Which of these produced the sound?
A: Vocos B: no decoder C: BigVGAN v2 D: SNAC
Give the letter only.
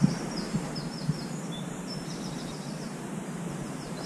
C